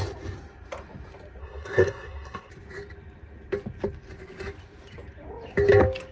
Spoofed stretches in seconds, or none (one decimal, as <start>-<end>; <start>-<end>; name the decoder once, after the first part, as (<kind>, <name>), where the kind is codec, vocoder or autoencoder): 1.4-2.5 (codec, SNAC)